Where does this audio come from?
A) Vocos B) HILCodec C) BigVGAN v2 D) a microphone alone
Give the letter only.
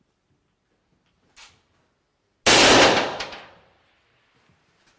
D